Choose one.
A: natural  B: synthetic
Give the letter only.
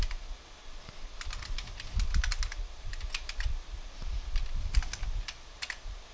A